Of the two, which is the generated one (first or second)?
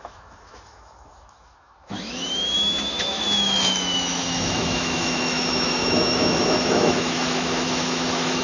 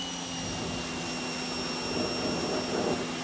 first